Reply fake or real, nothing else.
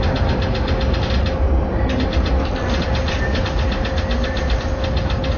real